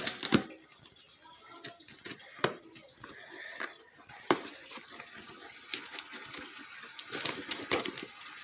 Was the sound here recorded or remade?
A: recorded